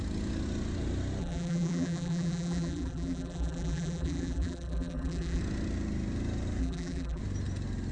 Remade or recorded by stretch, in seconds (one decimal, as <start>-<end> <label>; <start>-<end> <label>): 0.0-1.2 recorded; 1.2-5.4 remade; 5.4-6.6 recorded; 6.6-7.2 remade; 7.2-7.9 recorded